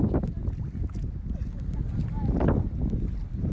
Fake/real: real